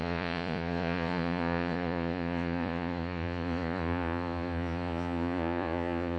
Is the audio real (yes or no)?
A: no